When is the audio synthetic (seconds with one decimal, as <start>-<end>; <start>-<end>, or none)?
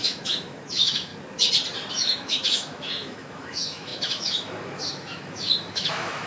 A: 0.0-1.1; 1.9-6.3